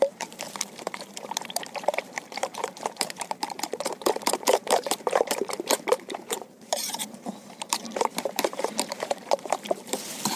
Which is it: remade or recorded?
remade